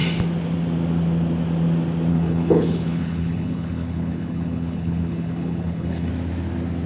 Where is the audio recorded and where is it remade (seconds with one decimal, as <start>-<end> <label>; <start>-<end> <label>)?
0.0-2.1 recorded; 2.1-6.1 remade; 6.1-6.9 recorded

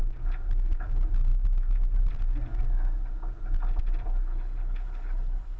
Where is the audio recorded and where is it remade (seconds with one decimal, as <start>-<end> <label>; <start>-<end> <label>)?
0.0-4.3 recorded; 4.3-5.6 remade

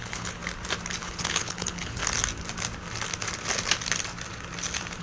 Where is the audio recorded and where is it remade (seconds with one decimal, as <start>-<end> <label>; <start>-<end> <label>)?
0.0-0.4 remade; 0.4-1.0 recorded; 1.0-2.0 remade; 2.0-5.0 recorded

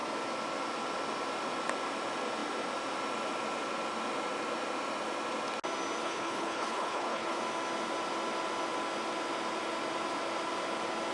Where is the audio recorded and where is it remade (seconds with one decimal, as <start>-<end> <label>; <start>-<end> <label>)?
0.0-6.0 recorded; 6.0-7.4 remade; 7.4-11.1 recorded

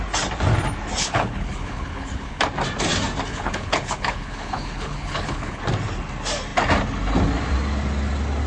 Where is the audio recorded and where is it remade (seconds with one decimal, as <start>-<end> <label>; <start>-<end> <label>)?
0.0-1.0 recorded; 1.0-2.4 remade; 2.4-3.3 recorded; 3.3-5.6 remade; 5.6-8.5 recorded

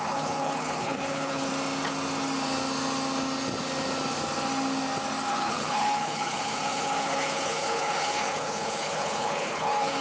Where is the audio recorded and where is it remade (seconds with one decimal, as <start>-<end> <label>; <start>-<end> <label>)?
0.0-1.5 remade; 1.5-5.3 recorded; 5.3-10.0 remade

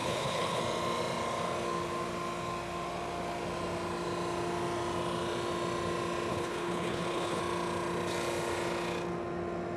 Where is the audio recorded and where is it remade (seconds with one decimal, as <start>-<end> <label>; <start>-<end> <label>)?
0.0-0.6 remade; 0.6-6.3 recorded; 6.3-7.4 remade; 7.4-9.8 recorded

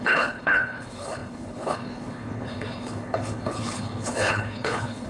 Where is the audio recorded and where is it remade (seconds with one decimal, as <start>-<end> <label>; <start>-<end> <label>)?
0.0-5.1 remade